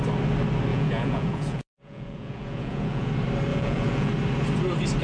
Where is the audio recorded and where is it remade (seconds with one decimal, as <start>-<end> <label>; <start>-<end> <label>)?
0.0-0.7 recorded; 0.7-3.1 remade; 3.1-3.5 recorded; 3.5-4.1 remade; 4.1-5.0 recorded